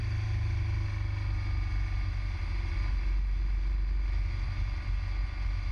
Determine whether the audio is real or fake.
real